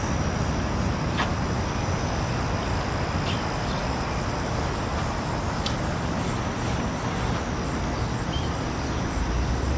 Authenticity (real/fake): real